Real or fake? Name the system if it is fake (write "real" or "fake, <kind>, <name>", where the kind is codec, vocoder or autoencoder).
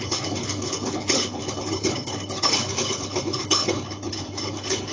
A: fake, codec, HILCodec